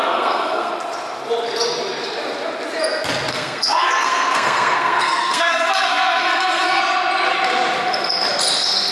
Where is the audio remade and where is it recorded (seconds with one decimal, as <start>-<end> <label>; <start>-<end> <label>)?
0.0-0.7 remade; 0.7-3.3 recorded; 3.3-6.8 remade; 6.8-8.9 recorded